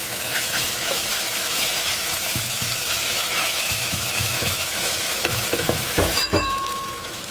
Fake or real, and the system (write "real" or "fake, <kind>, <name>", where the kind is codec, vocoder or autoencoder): fake, autoencoder, DAC-VAE